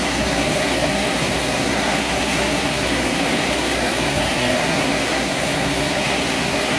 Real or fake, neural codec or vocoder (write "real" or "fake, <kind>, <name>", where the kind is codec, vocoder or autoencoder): fake, codec, SNAC